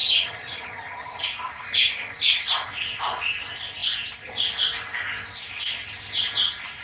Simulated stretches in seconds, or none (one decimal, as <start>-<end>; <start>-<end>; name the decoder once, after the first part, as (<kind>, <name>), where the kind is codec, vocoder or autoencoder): 0.0-1.1 (vocoder, HiFi-GAN)